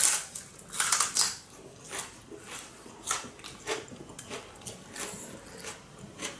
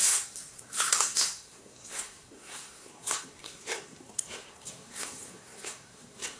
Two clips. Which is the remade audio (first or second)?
second